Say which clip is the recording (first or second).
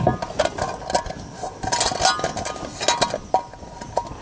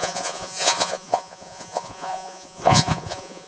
first